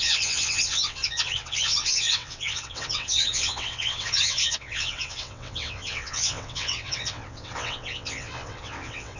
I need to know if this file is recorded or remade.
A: remade